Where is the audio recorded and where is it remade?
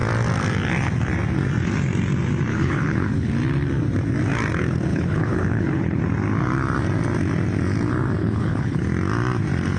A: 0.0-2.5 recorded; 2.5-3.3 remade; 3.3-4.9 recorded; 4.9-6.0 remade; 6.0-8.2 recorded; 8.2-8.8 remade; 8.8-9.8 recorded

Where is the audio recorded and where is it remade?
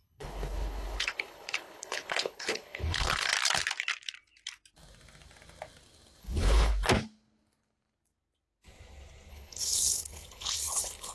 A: 0.0-3.3 remade; 3.3-6.2 recorded; 6.2-6.7 remade; 6.7-9.3 recorded; 9.3-11.1 remade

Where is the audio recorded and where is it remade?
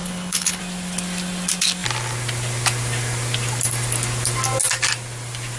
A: 0.0-0.6 remade; 0.6-5.6 recorded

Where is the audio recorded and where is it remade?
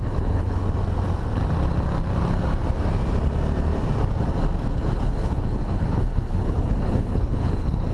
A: 0.0-0.6 remade; 0.6-4.7 recorded; 4.7-7.9 remade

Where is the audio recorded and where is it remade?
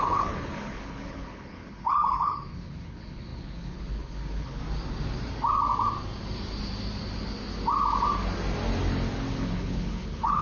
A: 0.0-4.6 remade; 4.6-9.3 recorded; 9.3-10.4 remade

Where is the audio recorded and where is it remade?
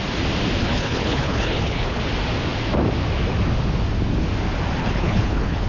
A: 0.0-0.6 recorded; 0.6-2.0 remade; 2.0-4.8 recorded; 4.8-5.7 remade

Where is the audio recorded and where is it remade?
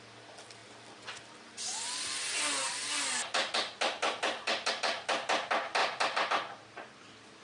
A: 0.0-7.4 recorded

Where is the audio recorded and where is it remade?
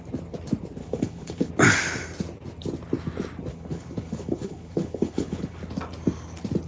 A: 0.0-0.8 recorded; 0.8-1.5 remade; 1.5-3.5 recorded; 3.5-5.6 remade; 5.6-6.7 recorded